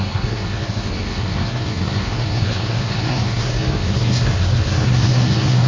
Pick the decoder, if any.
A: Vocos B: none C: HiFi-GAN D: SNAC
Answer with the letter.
D